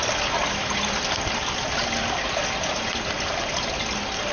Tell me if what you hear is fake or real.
real